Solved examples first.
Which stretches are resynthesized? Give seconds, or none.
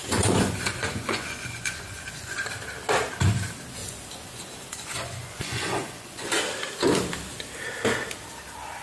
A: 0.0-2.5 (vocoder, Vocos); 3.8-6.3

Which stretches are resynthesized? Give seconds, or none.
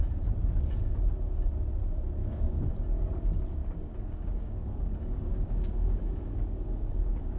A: 2.2-2.7 (codec, DAC); 3.6-7.4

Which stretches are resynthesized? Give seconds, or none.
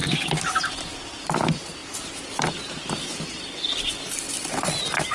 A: none